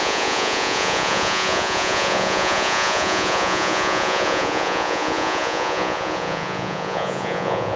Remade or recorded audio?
remade